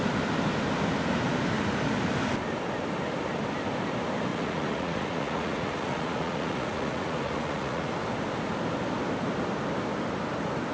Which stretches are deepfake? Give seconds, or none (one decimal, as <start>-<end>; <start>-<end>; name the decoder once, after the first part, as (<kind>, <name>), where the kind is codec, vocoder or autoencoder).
4.3-7.9 (vocoder, Vocos)